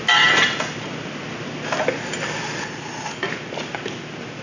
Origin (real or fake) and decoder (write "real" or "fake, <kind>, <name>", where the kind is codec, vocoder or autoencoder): real